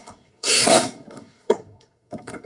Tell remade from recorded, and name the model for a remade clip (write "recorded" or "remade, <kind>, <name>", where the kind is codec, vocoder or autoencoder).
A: remade, codec, SNAC